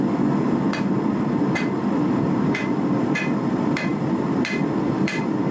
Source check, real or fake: real